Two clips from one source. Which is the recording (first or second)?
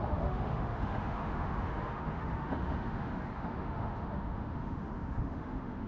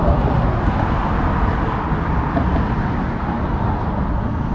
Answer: second